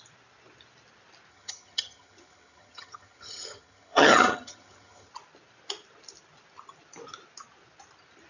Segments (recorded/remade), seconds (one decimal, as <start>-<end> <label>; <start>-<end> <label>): 0.0-1.3 recorded; 1.3-5.1 remade; 5.1-8.3 recorded